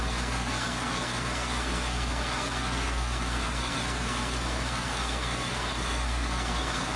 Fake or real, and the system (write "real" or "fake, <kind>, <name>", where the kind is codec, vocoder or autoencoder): fake, codec, SNAC